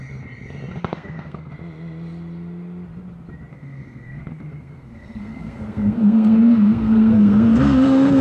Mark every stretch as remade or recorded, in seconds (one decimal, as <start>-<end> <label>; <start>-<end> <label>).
0.0-0.8 recorded; 0.8-1.5 remade; 1.5-3.5 recorded; 3.5-8.2 remade